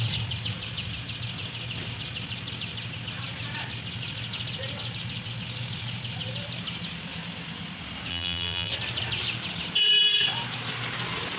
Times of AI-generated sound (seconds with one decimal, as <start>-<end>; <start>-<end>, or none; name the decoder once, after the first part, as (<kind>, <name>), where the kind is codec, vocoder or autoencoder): 8.1-8.7 (vocoder, BigVGAN v2)